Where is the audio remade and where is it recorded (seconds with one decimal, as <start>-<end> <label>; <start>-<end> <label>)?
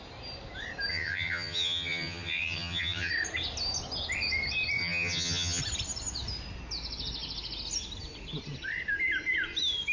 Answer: 0.0-0.9 recorded; 0.9-3.1 remade; 3.1-4.8 recorded; 4.8-5.6 remade; 5.6-9.9 recorded